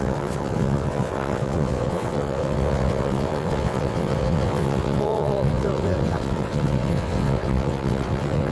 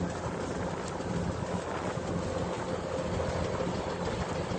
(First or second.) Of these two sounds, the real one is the second